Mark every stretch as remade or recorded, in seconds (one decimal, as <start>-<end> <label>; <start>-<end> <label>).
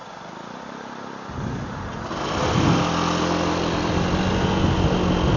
0.0-5.4 recorded